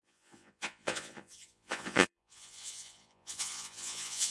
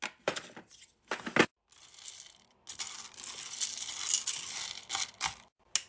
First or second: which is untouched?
second